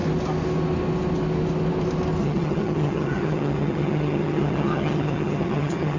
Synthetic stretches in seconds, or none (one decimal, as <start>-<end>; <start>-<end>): 2.2-6.0